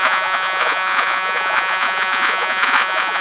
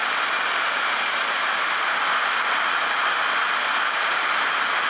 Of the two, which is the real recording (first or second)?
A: second